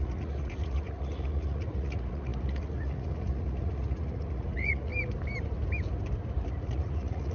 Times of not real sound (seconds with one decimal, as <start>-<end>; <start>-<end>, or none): 0.0-4.9; 6.6-7.3